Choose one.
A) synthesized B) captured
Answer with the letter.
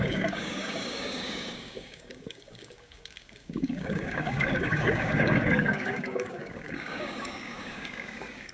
A